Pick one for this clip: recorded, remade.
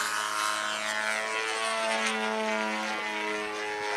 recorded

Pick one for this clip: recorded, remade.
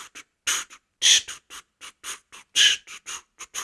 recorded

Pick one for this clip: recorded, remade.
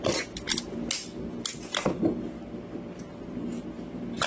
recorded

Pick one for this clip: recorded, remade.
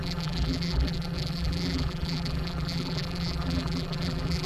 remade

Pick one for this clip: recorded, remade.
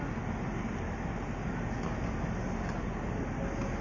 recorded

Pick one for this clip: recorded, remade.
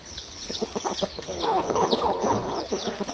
remade